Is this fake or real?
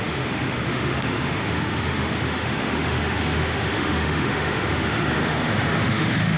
fake